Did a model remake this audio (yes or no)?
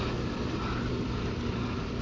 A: no